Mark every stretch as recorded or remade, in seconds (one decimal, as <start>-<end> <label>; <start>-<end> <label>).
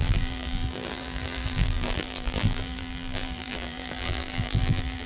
0.0-5.1 remade